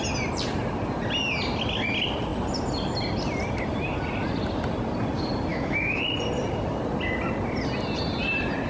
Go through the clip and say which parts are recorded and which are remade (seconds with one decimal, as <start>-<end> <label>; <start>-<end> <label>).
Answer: 0.0-5.5 recorded; 5.5-6.0 remade; 6.0-8.7 recorded